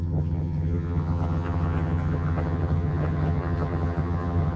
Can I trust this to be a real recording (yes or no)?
no